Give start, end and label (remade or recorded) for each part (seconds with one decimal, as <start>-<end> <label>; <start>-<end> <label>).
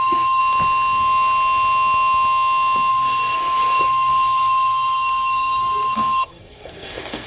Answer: 0.0-0.4 remade; 0.4-2.9 recorded; 2.9-7.3 remade